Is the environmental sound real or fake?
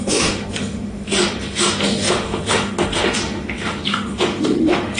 fake